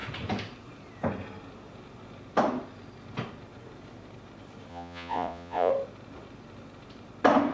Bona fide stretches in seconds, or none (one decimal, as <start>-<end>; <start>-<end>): 0.0-4.7; 5.7-7.5